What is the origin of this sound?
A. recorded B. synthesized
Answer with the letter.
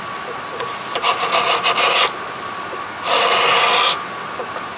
A